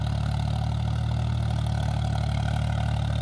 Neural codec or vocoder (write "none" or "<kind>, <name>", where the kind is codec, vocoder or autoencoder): none